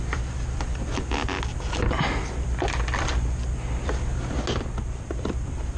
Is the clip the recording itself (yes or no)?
yes